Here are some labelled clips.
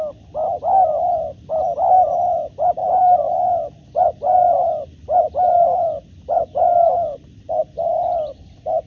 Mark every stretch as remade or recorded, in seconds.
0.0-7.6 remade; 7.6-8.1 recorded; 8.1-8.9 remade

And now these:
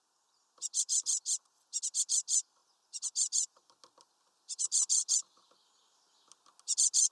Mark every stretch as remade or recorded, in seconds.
0.0-7.1 recorded

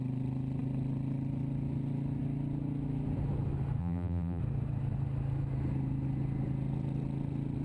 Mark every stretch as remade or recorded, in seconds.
0.0-3.8 recorded; 3.8-4.4 remade; 4.4-7.6 recorded

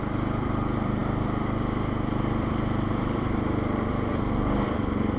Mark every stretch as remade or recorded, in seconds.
0.0-5.2 remade

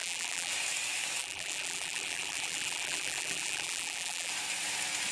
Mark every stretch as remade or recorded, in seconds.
0.0-0.5 remade; 0.5-1.2 recorded; 1.2-4.3 remade; 4.3-5.1 recorded

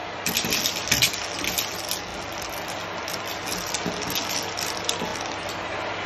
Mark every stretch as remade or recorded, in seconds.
0.0-0.6 remade; 0.6-6.1 recorded